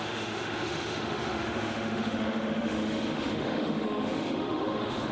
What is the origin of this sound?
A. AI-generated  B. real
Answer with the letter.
A